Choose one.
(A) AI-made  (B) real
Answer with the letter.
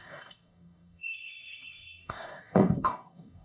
A